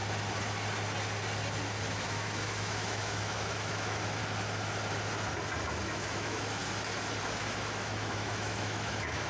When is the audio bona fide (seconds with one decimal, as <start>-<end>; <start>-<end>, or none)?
0.0-1.9; 4.2-5.8; 6.6-7.2